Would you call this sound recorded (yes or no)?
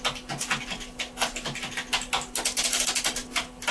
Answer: yes